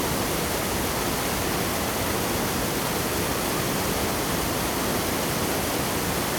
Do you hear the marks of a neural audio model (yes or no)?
no